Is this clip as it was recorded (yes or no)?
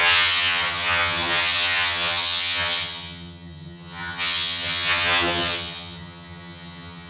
no